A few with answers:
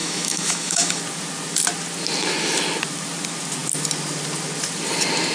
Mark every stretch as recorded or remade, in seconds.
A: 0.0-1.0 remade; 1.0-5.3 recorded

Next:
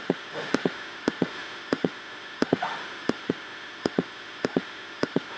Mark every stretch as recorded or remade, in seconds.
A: 0.0-5.4 remade

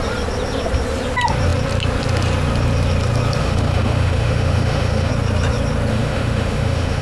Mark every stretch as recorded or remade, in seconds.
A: 0.0-3.4 recorded; 3.4-5.1 remade; 5.1-5.9 recorded; 5.9-7.0 remade

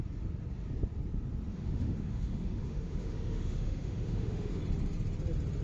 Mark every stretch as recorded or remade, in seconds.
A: 0.0-1.5 recorded; 1.5-4.6 remade; 4.6-5.6 recorded